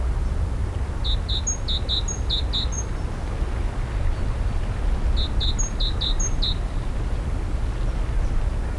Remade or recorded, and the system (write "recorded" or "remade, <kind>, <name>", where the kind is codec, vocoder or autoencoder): recorded